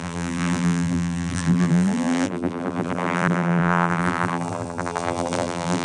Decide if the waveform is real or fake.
fake